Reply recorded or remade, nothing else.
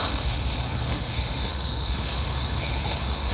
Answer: remade